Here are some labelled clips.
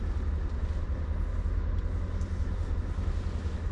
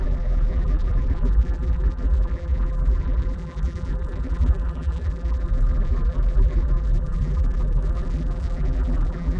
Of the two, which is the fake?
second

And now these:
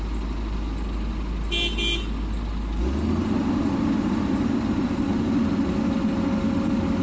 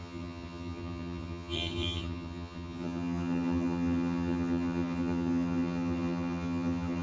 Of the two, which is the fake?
second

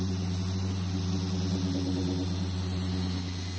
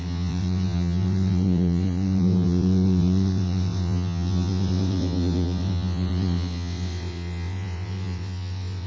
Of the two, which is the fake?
second